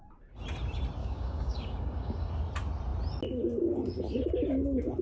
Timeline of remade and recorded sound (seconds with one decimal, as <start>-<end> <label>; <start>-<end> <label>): 0.0-1.0 recorded; 1.0-2.3 remade; 2.3-5.0 recorded